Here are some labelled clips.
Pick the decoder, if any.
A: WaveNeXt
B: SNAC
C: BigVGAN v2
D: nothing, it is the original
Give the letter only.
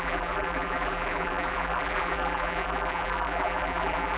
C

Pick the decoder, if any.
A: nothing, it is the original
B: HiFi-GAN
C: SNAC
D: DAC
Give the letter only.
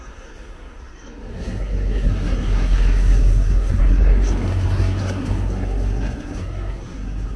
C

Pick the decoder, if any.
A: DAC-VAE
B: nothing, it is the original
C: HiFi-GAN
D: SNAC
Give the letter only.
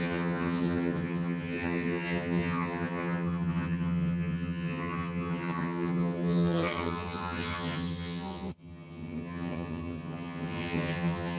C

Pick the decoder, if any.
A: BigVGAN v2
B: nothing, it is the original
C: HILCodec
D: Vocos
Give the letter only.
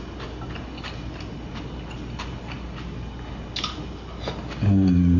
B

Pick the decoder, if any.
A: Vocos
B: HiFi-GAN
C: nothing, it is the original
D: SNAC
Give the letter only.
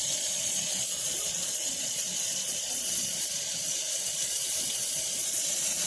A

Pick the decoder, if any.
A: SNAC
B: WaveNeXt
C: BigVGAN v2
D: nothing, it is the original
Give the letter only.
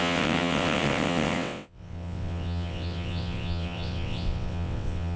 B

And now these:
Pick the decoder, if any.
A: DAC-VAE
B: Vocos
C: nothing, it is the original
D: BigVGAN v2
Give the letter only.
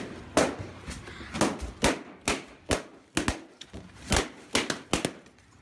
C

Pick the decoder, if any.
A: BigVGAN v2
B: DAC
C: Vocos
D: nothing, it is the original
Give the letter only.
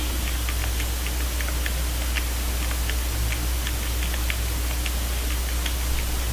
D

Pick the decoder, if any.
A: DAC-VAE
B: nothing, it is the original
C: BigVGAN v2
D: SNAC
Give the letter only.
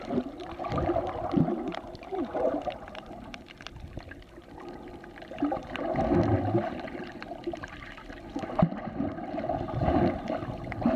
B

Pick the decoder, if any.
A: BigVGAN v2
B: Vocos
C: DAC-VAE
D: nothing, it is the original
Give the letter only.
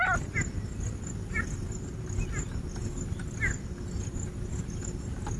D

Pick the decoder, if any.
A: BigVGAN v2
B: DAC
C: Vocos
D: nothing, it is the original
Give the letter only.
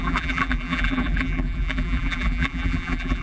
A